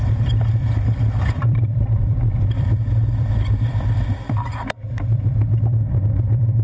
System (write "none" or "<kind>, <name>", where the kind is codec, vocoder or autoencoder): vocoder, BigVGAN v2